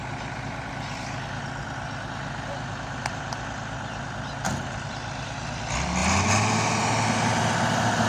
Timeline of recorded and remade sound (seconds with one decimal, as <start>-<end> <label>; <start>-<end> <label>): 0.0-8.1 recorded